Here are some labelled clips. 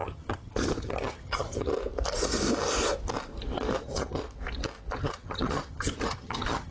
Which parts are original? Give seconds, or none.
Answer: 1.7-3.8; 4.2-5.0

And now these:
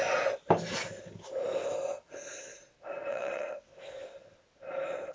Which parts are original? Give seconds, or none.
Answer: 0.0-3.1; 3.7-5.1